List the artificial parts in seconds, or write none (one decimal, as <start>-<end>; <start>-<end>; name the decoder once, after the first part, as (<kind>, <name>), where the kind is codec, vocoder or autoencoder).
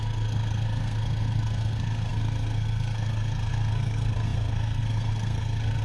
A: 0.0-5.8 (codec, SNAC)